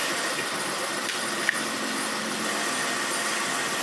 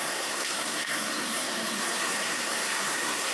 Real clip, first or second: first